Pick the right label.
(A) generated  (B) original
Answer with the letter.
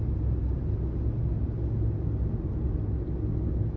B